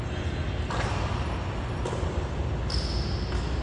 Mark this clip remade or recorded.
recorded